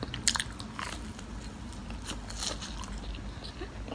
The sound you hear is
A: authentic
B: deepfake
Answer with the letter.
A